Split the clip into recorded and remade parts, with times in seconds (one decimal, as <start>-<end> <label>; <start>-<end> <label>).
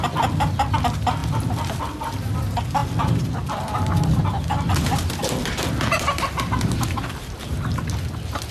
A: 0.0-1.2 recorded; 1.2-1.8 remade; 1.8-2.8 recorded; 2.8-4.2 remade; 4.2-5.4 recorded; 5.4-7.8 remade; 7.8-8.5 recorded